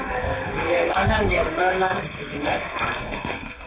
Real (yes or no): no